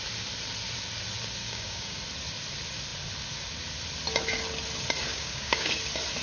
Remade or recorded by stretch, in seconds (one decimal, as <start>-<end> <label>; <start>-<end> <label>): 0.0-1.4 recorded; 1.4-2.0 remade; 2.0-5.1 recorded; 5.1-5.8 remade; 5.8-6.2 recorded